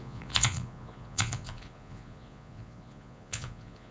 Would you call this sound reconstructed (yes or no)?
yes